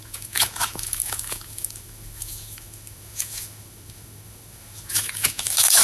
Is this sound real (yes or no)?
no